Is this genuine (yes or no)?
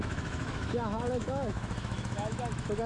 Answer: no